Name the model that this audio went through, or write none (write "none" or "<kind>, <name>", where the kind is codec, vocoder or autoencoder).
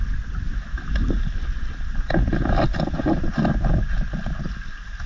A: none